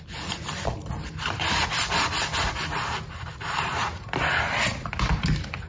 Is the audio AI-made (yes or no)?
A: no